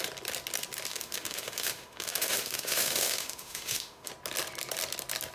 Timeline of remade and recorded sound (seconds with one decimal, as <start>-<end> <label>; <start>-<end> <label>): 0.0-0.9 recorded; 0.9-4.1 remade; 4.1-5.3 recorded